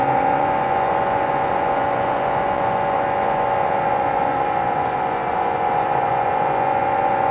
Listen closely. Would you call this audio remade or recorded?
remade